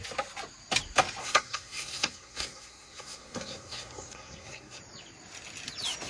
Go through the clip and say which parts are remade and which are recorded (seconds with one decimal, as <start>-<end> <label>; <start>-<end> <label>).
0.0-1.2 recorded; 1.2-4.8 remade; 4.8-6.1 recorded